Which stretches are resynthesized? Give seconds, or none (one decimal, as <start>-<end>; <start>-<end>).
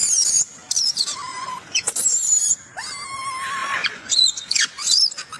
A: 1.3-1.9; 3.6-5.0